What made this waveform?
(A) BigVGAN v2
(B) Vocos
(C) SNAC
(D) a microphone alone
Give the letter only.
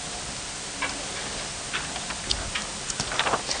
D